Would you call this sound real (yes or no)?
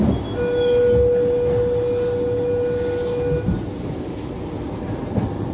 yes